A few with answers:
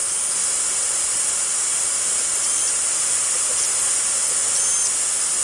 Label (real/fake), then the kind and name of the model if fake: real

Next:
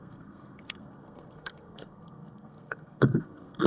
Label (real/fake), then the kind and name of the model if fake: fake, codec, SNAC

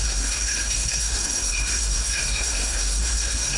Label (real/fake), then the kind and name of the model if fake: fake, codec, SNAC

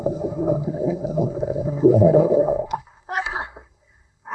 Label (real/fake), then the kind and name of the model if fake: fake, codec, SNAC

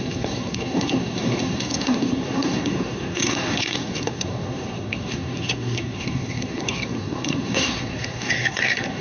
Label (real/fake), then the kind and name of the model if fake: fake, codec, SNAC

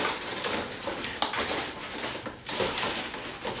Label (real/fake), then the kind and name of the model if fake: real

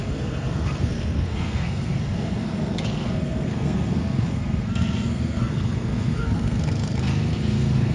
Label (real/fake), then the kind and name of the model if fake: fake, codec, SNAC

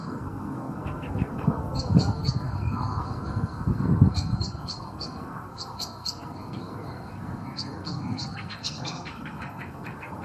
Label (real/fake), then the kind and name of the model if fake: fake, codec, SNAC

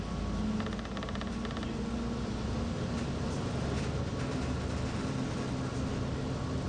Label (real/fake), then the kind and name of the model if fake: real